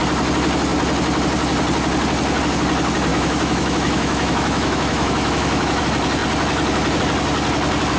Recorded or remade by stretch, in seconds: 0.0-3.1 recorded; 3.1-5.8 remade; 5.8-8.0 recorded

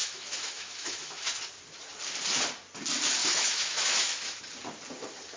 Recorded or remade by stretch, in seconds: 0.0-1.3 remade; 1.3-3.2 recorded; 3.2-4.4 remade; 4.4-5.4 recorded

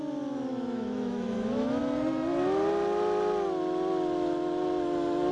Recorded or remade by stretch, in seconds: 0.0-0.5 recorded; 0.5-1.8 remade; 1.8-5.3 recorded

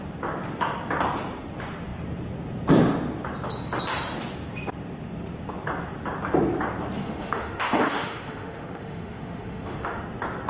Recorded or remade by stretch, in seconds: 0.0-7.0 recorded; 7.0-10.0 remade; 10.0-10.5 recorded

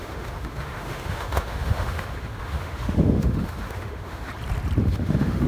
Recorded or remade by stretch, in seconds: 0.0-4.3 remade; 4.3-4.8 recorded; 4.8-5.5 remade

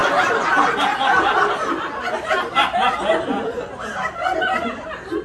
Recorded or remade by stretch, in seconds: 0.0-5.2 recorded

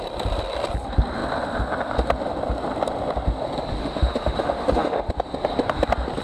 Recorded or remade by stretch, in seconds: 0.0-3.8 recorded; 3.8-5.1 remade; 5.1-6.2 recorded